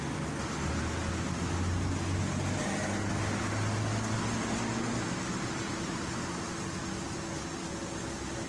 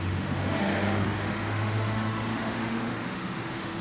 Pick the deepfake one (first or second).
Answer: second